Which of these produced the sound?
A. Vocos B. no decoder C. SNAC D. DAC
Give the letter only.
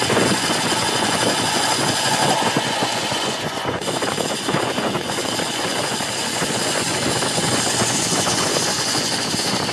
A